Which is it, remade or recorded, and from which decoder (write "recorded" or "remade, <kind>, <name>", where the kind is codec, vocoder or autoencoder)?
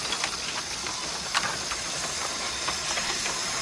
recorded